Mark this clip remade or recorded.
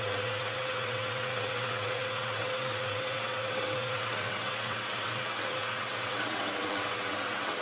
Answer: remade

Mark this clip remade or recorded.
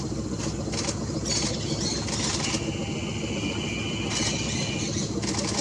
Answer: recorded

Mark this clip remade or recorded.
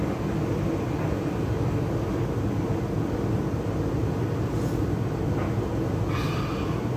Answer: recorded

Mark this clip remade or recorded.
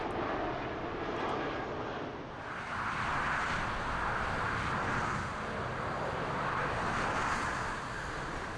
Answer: recorded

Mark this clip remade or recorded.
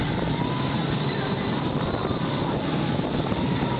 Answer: recorded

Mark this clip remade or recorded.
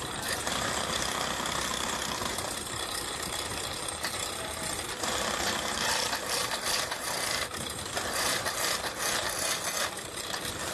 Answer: remade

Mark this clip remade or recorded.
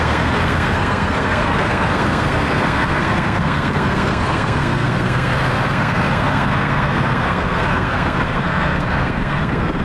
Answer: remade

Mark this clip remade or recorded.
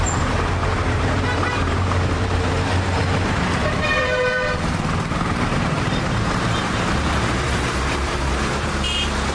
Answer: remade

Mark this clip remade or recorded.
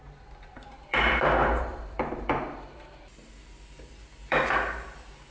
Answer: remade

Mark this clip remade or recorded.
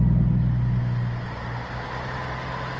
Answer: recorded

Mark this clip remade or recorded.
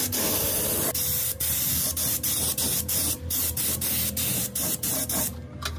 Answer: recorded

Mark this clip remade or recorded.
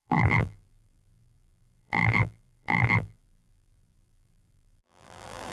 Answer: remade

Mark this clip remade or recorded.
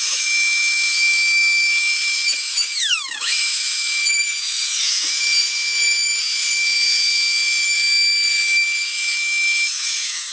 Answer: remade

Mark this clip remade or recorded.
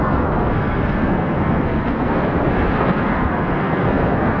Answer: remade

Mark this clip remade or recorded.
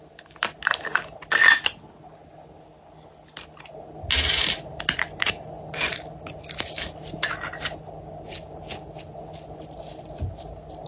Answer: recorded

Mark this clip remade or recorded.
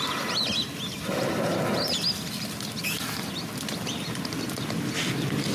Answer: recorded